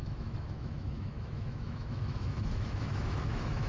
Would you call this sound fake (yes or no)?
yes